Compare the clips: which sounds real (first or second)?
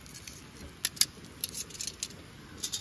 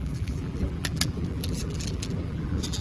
first